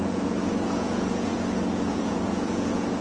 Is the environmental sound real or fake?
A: fake